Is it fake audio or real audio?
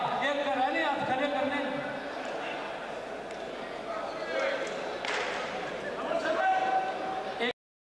real